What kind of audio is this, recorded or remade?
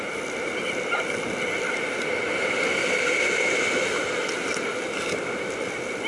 recorded